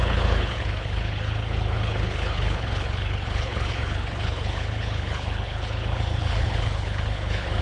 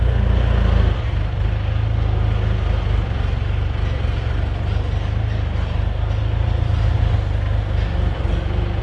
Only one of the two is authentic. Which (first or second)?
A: second